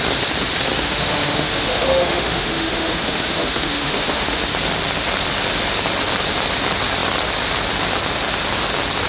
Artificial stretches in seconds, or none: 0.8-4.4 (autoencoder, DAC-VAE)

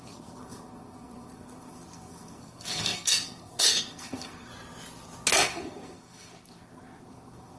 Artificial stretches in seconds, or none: 0.0-4.5 (codec, SNAC); 5.3-7.6

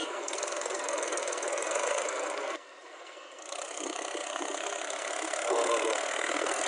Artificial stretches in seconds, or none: 0.0-6.7 (codec, SNAC)

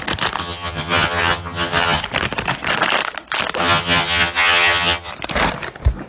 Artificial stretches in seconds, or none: 0.4-2.0 (vocoder, HiFi-GAN); 3.6-5.1

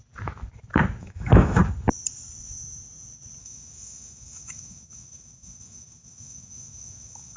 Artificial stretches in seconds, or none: 1.0-1.6 (autoencoder, DAC-VAE); 3.4-7.4

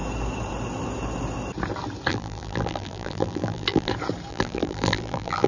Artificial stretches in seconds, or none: 2.1-3.9 (vocoder, BigVGAN v2); 4.3-5.5